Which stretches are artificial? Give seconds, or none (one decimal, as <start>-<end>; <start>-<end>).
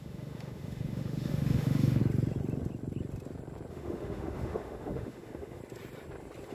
0.0-2.0; 3.7-5.6